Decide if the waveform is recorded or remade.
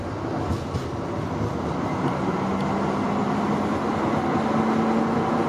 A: recorded